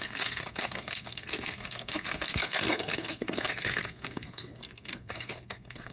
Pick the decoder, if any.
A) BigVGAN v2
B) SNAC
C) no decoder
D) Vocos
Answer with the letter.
B